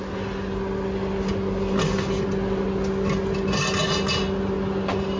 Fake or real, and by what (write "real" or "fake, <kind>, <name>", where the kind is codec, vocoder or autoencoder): real